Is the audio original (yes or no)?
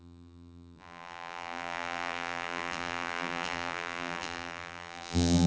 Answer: no